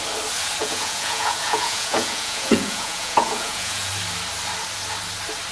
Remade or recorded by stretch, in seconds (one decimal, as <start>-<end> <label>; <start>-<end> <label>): 0.0-0.6 recorded; 0.6-3.9 remade; 3.9-5.5 recorded

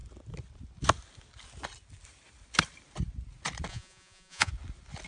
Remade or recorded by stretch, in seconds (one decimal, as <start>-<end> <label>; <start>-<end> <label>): 0.0-3.7 recorded; 3.7-4.5 remade; 4.5-5.1 recorded